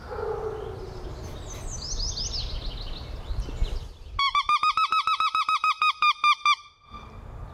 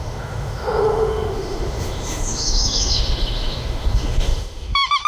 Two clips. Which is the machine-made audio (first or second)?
second